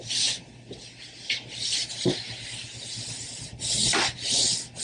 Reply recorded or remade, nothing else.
recorded